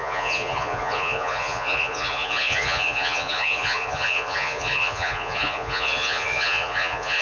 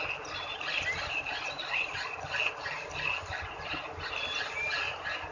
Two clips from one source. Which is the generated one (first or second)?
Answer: first